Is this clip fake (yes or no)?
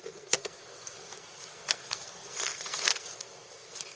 yes